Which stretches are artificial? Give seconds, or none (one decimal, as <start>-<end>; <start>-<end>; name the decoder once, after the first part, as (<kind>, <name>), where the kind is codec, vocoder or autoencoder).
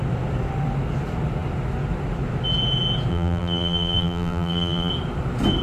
3.1-4.9 (vocoder, BigVGAN v2)